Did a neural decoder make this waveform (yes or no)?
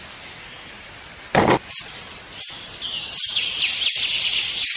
no